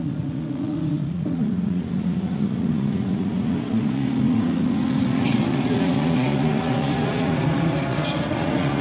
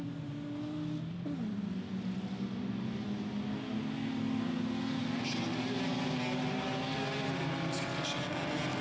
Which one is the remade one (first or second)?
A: first